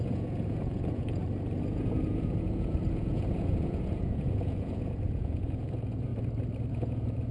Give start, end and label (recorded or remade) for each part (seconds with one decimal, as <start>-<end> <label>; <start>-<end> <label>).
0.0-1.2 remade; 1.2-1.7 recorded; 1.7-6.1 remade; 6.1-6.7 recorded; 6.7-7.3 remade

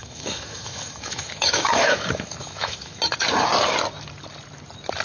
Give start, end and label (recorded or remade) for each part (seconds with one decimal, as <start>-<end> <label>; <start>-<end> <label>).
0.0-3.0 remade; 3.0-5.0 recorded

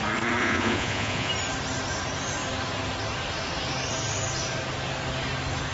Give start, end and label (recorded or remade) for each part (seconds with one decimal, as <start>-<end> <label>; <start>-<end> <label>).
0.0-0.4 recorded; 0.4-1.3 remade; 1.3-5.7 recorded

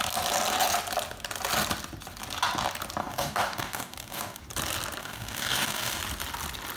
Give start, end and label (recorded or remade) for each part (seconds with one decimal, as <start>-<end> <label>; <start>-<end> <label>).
0.0-3.0 recorded; 3.0-4.4 remade; 4.4-5.0 recorded; 5.0-6.0 remade; 6.0-6.8 recorded

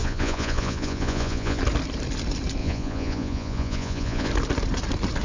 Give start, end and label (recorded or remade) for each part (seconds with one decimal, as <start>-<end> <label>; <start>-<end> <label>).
0.0-1.6 remade; 1.6-2.6 recorded; 2.6-4.3 remade; 4.3-5.2 recorded

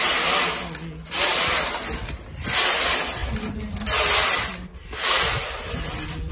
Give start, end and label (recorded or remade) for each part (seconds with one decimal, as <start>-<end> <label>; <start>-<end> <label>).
0.0-6.3 recorded

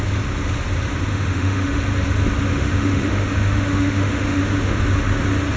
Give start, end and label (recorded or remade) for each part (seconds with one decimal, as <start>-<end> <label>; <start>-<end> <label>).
0.0-1.1 recorded; 1.1-1.8 remade; 1.8-2.5 recorded; 2.5-4.8 remade; 4.8-5.6 recorded